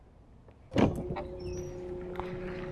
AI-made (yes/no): no